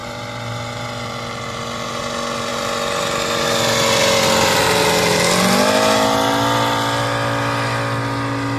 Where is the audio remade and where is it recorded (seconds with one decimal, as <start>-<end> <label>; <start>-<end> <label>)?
0.0-2.0 remade; 2.0-8.6 recorded